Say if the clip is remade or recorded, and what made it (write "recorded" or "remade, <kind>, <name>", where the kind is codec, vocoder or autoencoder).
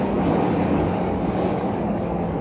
remade, codec, DAC